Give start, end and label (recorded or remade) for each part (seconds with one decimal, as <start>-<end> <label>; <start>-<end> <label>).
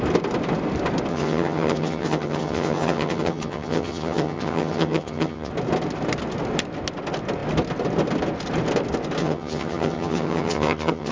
0.0-1.1 recorded; 1.1-5.5 remade; 5.5-9.2 recorded; 9.2-11.1 remade